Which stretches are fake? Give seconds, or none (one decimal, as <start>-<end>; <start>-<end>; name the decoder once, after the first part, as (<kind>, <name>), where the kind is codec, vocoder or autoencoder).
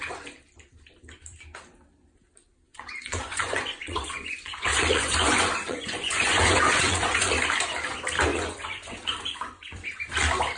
2.7-7.3 (vocoder, Vocos); 8.3-10.0